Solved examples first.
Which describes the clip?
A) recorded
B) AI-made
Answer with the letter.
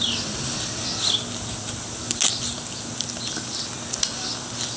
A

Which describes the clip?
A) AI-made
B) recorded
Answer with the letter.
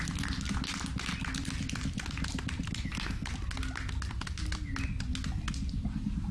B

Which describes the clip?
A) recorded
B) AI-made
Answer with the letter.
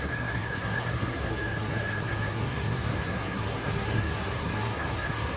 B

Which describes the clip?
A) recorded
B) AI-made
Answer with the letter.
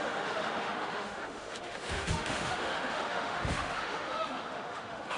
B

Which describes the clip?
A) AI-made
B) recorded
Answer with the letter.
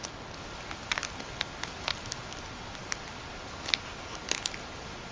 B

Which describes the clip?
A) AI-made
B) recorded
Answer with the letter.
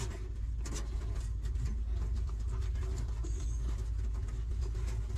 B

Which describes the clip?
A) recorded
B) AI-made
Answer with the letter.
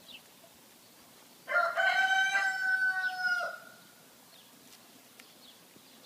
A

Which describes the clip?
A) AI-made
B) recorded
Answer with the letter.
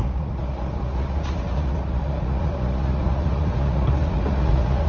A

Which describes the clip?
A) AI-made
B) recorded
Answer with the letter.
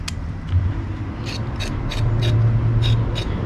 B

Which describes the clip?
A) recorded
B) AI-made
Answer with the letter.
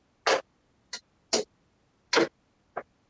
A